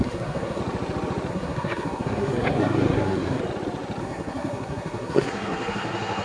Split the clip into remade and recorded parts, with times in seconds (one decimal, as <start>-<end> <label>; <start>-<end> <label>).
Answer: 0.0-0.6 remade; 0.6-1.3 recorded; 1.3-3.4 remade; 3.4-4.0 recorded; 4.0-6.2 remade